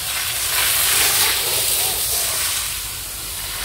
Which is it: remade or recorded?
recorded